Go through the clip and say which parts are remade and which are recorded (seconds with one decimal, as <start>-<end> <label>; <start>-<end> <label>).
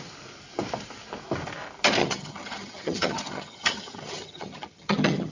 0.0-2.0 recorded; 2.0-5.3 remade